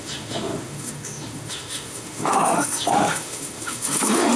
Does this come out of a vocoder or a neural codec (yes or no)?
yes